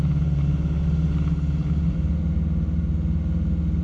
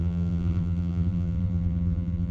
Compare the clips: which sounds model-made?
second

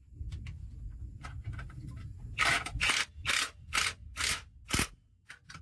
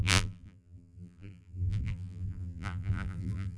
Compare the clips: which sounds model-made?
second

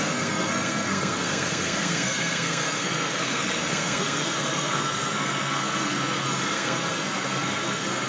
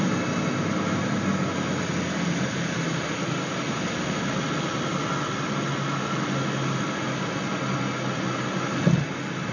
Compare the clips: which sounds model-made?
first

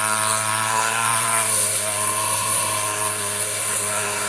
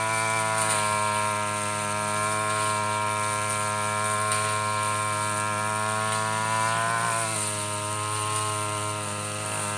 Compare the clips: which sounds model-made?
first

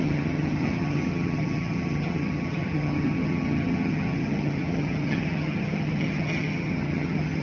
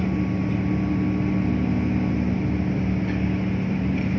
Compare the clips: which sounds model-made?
first